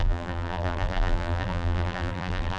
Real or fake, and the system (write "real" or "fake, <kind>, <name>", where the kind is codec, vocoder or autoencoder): fake, vocoder, BigVGAN v2